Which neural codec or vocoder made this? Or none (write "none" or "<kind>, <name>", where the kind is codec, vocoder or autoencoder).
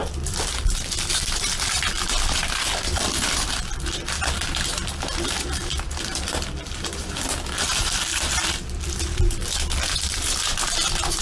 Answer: vocoder, BigVGAN v2